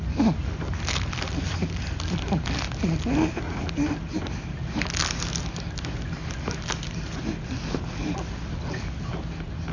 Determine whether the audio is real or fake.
real